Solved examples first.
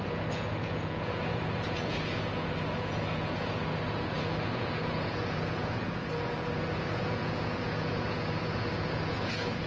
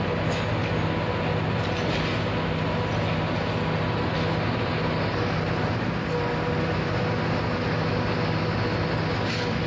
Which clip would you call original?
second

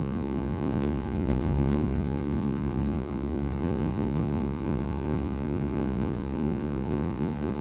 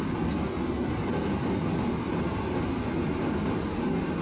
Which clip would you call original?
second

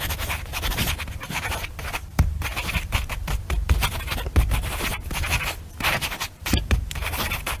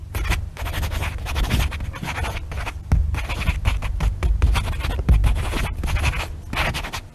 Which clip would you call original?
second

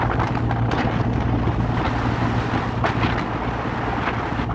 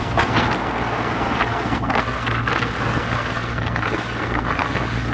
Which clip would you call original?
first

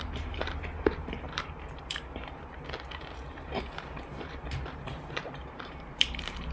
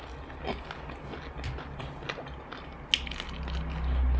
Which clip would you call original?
second